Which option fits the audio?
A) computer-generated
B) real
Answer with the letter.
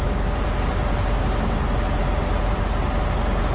B